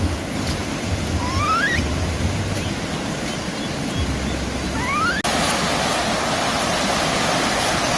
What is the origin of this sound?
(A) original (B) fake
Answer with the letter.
A